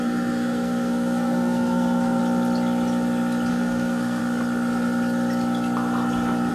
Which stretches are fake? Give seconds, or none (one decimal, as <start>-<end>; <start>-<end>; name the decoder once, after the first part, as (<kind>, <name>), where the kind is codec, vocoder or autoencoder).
0.0-2.2 (codec, SNAC); 3.5-4.2